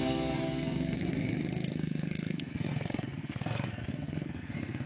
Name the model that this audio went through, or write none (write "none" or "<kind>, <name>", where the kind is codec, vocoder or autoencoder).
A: codec, SNAC